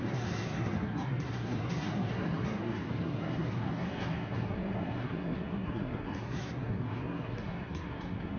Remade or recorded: remade